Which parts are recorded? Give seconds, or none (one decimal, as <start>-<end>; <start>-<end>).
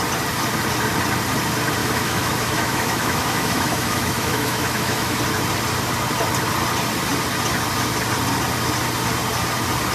0.0-1.8; 5.2-9.9